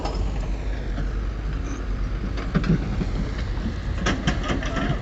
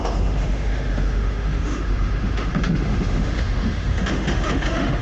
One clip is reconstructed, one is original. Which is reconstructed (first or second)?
second